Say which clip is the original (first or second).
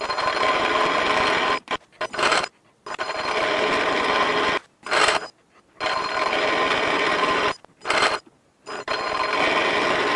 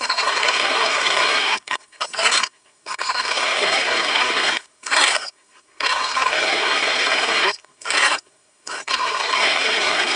first